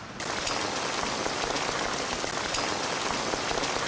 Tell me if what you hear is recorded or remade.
recorded